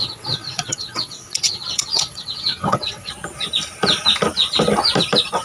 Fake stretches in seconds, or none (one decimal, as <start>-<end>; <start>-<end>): 0.0-3.1